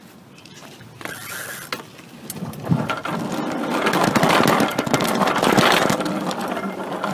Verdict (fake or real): real